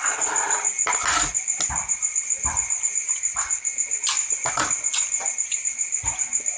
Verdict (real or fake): real